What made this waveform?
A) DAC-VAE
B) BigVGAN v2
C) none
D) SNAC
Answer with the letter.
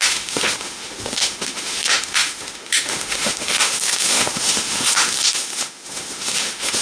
A